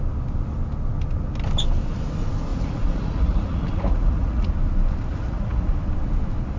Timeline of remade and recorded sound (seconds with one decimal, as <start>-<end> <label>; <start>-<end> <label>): 0.0-2.5 recorded; 2.5-4.5 remade; 4.5-5.1 recorded; 5.1-5.7 remade; 5.7-6.6 recorded